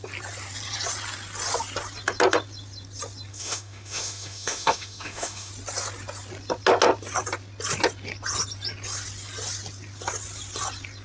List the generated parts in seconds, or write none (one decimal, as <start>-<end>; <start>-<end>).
3.3-5.5